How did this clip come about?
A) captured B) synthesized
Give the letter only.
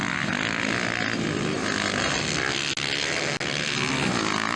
A